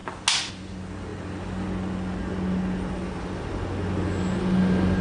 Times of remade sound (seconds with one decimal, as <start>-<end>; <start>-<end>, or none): none